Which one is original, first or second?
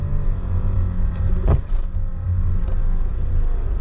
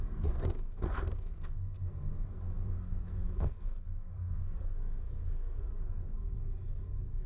first